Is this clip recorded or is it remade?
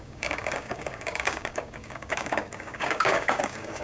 remade